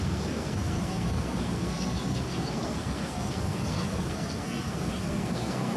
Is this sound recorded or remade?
remade